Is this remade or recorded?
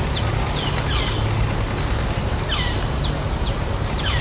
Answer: recorded